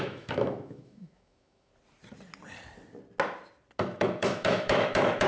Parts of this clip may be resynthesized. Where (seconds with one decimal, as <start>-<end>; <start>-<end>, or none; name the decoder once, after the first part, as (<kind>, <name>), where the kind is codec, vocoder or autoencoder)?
0.0-1.7 (autoencoder, DAC-VAE); 3.8-5.3